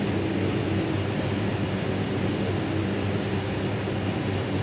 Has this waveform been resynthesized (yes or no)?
no